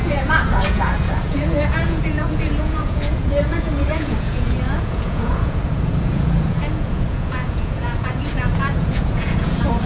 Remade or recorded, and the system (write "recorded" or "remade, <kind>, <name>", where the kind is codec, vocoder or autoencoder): remade, vocoder, Vocos